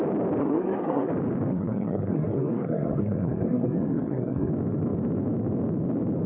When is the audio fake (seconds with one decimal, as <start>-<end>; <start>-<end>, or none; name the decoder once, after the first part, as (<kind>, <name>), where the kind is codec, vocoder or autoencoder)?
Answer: 0.4-1.1 (codec, SNAC); 1.5-4.5